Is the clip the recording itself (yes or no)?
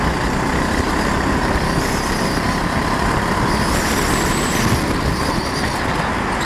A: yes